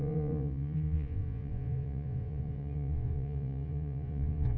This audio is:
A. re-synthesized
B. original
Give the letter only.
A